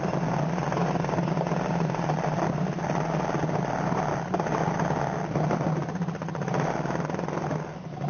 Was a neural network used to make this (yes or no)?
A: no